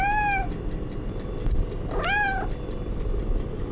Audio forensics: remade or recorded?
recorded